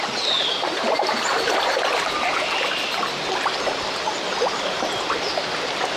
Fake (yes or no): no